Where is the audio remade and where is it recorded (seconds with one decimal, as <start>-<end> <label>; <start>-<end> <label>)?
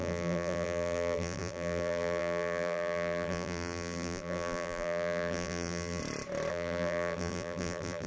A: 0.0-6.0 remade; 6.0-6.5 recorded; 6.5-8.1 remade